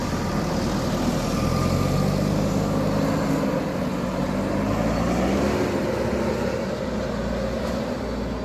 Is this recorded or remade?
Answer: recorded